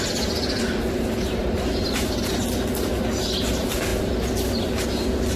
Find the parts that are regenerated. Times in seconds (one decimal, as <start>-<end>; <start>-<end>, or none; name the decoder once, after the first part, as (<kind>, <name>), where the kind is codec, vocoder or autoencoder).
1.4-2.4 (vocoder, BigVGAN v2)